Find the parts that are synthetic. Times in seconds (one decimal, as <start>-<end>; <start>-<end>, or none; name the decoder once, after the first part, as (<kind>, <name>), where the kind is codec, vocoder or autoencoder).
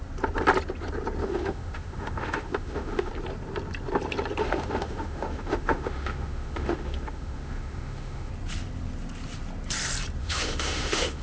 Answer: 1.2-3.1 (autoencoder, DAC-VAE); 4.4-8.3; 10.2-11.2